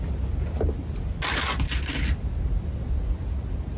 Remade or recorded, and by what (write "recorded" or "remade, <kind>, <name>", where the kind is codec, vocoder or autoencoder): recorded